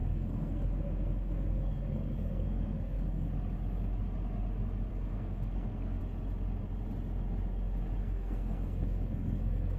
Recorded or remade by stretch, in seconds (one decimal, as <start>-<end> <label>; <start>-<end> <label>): 0.0-3.3 remade; 3.3-4.9 recorded; 4.9-6.0 remade; 6.0-8.0 recorded; 8.0-9.8 remade